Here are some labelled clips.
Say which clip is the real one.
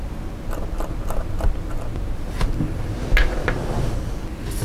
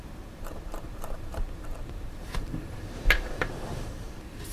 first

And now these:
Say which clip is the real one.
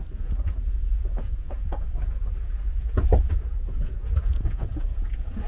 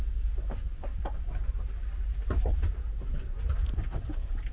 second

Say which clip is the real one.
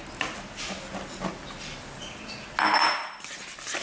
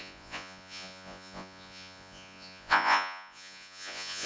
first